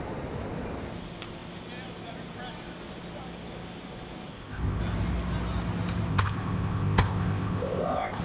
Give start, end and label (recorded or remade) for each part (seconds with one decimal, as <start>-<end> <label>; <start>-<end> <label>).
0.0-4.3 recorded; 4.3-4.8 remade; 4.8-6.1 recorded; 6.1-8.2 remade